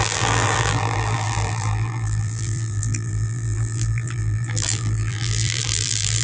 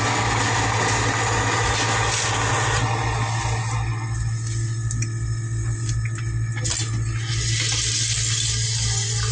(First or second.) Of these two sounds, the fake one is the first